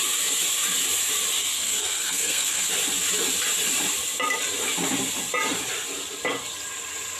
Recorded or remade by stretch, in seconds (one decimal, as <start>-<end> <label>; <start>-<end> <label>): 0.0-1.4 recorded; 1.4-2.7 remade; 2.7-7.2 recorded